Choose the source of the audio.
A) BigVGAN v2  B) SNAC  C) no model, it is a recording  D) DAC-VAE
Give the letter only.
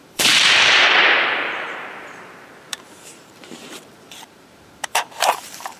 A